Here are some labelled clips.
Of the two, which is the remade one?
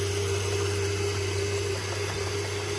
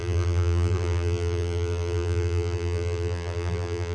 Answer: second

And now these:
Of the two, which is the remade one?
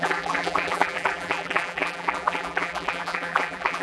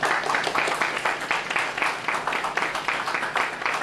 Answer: first